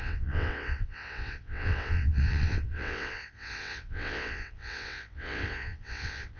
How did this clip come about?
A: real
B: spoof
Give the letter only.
B